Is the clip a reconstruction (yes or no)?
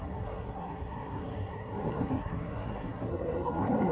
yes